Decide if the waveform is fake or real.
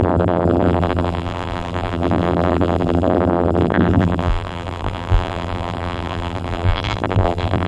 fake